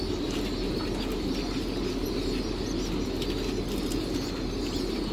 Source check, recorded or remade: recorded